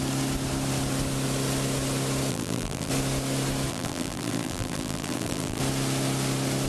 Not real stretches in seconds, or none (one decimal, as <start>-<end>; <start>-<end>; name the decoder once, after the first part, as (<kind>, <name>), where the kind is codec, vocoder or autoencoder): 2.3-2.9 (vocoder, BigVGAN v2); 3.7-5.6